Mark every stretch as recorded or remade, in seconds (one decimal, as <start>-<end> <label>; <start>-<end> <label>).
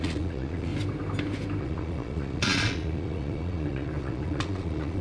0.0-0.7 remade; 0.7-1.6 recorded; 1.6-5.0 remade